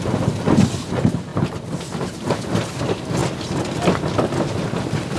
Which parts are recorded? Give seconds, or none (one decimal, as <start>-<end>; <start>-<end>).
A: 0.0-1.3; 2.8-5.2